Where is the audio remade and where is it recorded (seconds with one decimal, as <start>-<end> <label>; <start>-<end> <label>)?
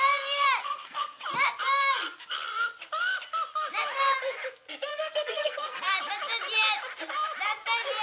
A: 0.0-0.6 recorded; 0.6-1.2 remade; 1.2-4.9 recorded; 4.9-5.9 remade; 5.9-8.0 recorded